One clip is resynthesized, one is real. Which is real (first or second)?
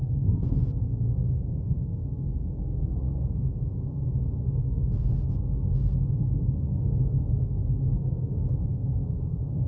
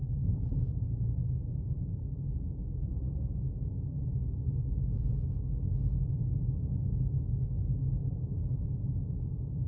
second